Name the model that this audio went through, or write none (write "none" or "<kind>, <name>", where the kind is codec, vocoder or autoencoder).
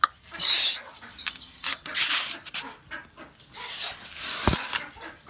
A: none